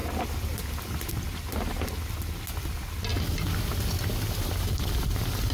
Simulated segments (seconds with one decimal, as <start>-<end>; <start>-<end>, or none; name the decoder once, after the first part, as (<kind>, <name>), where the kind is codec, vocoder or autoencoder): none